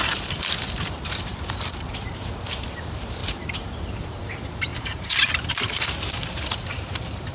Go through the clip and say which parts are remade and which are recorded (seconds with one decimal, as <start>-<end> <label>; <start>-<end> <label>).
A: 0.0-7.3 remade